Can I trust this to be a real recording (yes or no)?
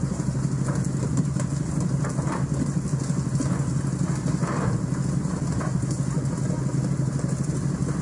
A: yes